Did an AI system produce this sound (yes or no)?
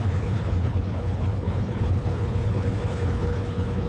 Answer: yes